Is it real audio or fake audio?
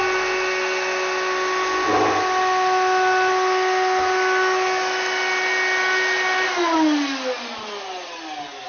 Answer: real